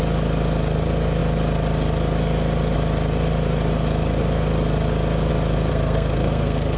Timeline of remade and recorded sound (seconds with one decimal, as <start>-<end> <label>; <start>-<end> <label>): 0.0-5.7 recorded; 5.7-6.8 remade